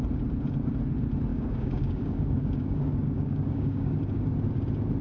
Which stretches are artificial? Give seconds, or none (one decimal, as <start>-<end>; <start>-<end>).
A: 1.3-4.0